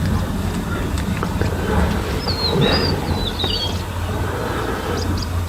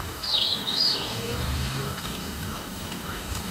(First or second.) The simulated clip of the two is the second